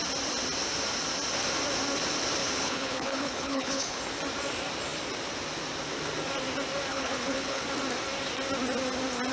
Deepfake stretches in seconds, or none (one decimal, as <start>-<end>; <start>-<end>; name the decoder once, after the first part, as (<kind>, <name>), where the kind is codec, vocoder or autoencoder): 2.4-4.0 (codec, HILCodec); 6.9-7.6